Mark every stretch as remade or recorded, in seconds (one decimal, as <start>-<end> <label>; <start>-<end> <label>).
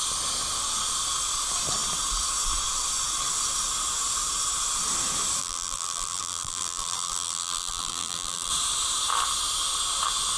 0.0-5.4 recorded; 5.4-8.5 remade; 8.5-10.4 recorded